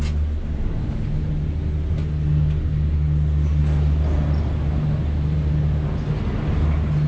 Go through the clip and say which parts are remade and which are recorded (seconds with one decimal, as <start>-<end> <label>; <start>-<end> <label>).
0.0-7.1 recorded